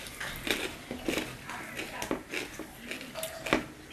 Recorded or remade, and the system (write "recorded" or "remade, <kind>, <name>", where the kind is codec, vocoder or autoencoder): recorded